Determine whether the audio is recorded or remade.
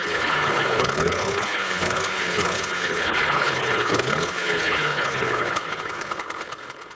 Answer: remade